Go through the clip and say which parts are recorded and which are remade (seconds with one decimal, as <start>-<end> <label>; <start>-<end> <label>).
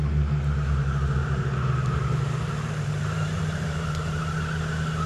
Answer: 0.0-1.2 recorded; 1.2-4.2 remade; 4.2-5.1 recorded